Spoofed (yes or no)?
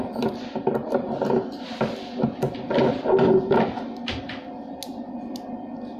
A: no